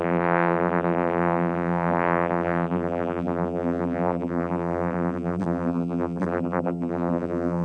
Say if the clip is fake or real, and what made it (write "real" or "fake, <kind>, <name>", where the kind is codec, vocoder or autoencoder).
fake, vocoder, BigVGAN v2